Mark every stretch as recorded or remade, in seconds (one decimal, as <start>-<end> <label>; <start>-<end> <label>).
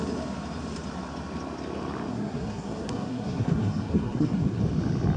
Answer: 0.0-2.1 recorded; 2.1-4.6 remade; 4.6-5.2 recorded